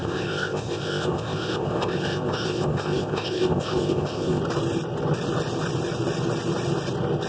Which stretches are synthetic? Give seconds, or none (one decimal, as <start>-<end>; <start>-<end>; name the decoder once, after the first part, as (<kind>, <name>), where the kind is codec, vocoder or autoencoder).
0.0-4.4 (codec, ZipCodec)